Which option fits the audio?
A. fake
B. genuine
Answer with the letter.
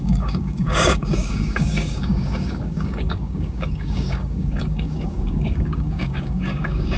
A